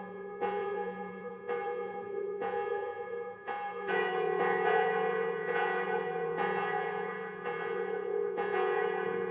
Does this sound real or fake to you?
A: fake